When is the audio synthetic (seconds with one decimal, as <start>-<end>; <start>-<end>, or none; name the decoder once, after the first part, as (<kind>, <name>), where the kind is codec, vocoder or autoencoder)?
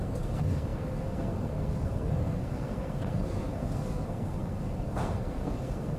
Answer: 0.0-6.0 (codec, SNAC)